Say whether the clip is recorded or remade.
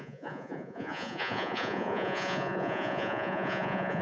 remade